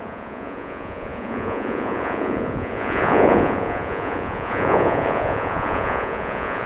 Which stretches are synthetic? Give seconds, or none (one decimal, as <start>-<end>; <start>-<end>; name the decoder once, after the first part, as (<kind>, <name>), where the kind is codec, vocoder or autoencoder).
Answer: 0.0-6.7 (vocoder, Vocos)